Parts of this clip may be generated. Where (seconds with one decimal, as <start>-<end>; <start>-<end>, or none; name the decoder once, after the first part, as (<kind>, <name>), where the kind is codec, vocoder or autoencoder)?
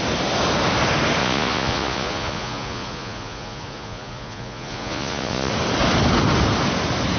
1.2-5.5 (vocoder, Vocos)